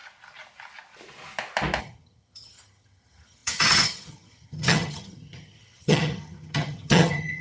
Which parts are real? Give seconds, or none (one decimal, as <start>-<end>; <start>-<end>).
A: 0.0-1.8